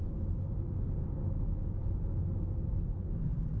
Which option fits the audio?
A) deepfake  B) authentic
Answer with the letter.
B